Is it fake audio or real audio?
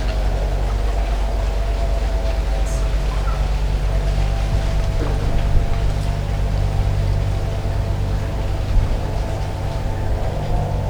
real